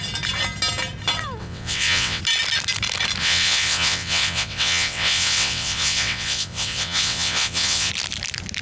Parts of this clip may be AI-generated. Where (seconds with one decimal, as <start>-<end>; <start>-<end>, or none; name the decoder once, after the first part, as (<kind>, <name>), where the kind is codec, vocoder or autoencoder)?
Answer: 1.4-2.2 (vocoder, WaveNeXt); 3.2-7.9